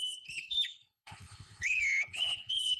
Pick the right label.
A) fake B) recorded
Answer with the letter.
A